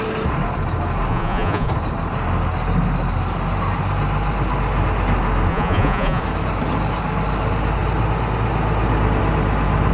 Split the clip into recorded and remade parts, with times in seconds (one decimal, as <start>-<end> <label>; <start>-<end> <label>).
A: 0.0-1.1 recorded; 1.1-1.7 remade; 1.7-5.5 recorded; 5.5-6.2 remade; 6.2-9.9 recorded